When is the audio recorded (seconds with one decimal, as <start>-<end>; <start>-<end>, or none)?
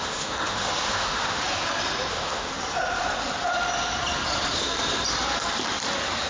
1.4-2.1; 2.5-6.3